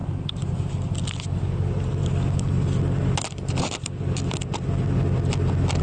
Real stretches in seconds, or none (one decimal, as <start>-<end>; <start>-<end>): 0.0-5.8